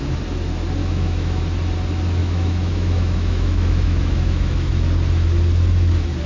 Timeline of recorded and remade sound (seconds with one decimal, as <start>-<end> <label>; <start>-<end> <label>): 0.0-0.8 recorded; 0.8-1.4 remade; 1.4-2.2 recorded; 2.2-4.7 remade; 4.7-6.3 recorded